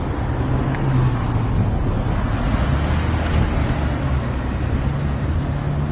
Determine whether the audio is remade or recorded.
recorded